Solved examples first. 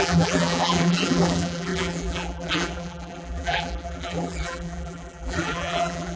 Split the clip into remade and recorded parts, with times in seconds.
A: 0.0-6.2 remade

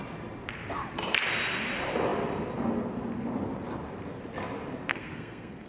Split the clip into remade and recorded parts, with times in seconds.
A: 0.0-4.9 recorded; 4.9-5.7 remade

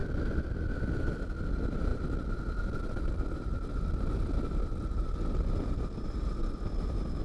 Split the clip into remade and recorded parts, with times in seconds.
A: 0.0-7.2 remade

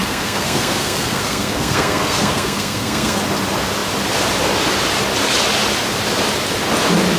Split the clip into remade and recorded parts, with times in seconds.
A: 0.0-3.2 remade; 3.2-7.2 recorded